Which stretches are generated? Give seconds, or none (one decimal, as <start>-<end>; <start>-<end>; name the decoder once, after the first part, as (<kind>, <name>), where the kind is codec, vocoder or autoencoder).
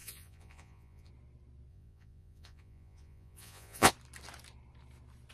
0.0-1.1 (vocoder, Vocos); 1.7-3.9